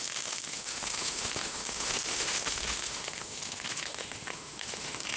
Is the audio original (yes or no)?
no